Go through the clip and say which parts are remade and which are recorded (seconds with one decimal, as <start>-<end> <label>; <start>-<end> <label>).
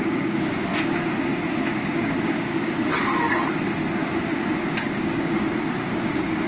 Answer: 0.0-0.7 remade; 0.7-1.5 recorded; 1.5-2.9 remade; 2.9-4.6 recorded; 4.6-6.5 remade